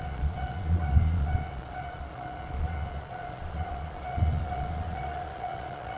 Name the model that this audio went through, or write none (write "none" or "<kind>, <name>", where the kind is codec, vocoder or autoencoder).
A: vocoder, Vocos